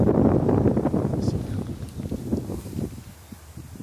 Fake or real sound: real